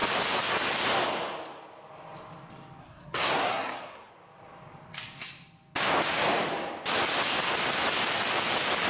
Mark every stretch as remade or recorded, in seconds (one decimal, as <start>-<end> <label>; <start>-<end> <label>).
0.0-2.8 recorded; 2.8-4.1 remade; 4.1-8.9 recorded